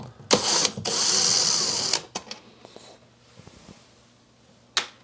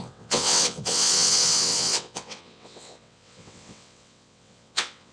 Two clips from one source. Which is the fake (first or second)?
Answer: second